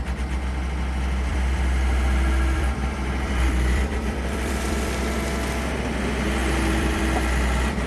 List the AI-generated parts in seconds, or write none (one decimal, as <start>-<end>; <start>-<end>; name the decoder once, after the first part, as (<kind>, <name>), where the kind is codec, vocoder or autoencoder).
1.3-5.0 (vocoder, BigVGAN v2); 6.4-7.0